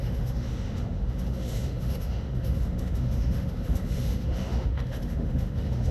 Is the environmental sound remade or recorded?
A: remade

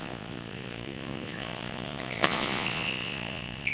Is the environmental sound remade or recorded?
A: remade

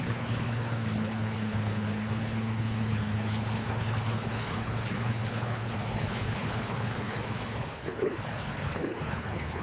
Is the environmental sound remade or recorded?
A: remade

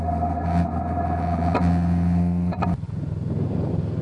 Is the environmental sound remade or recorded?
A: recorded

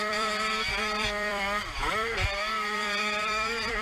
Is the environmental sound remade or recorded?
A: remade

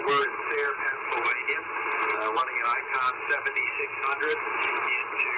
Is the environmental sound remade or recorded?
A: recorded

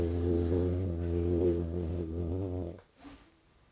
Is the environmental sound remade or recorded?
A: recorded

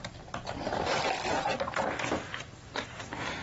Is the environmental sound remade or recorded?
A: recorded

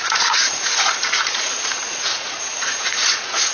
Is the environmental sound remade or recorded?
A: remade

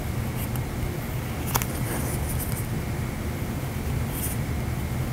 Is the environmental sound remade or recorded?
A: recorded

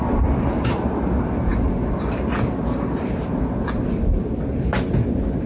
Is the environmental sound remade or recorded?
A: recorded